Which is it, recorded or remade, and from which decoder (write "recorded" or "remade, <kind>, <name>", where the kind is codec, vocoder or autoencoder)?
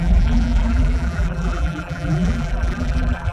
remade, vocoder, BigVGAN v2